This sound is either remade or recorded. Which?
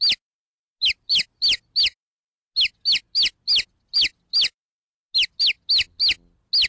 recorded